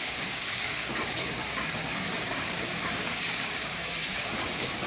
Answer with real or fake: fake